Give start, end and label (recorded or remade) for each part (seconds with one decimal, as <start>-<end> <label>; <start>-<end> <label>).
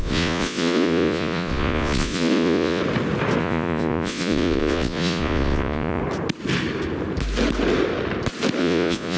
0.0-2.8 remade; 2.8-3.4 recorded; 3.4-6.0 remade; 6.0-8.6 recorded; 8.6-9.2 remade